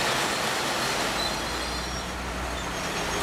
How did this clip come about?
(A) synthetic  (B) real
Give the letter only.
B